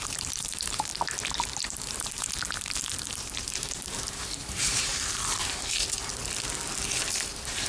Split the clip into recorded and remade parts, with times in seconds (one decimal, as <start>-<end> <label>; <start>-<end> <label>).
0.0-0.9 remade; 0.9-1.9 recorded; 1.9-4.9 remade; 4.9-7.3 recorded; 7.3-7.7 remade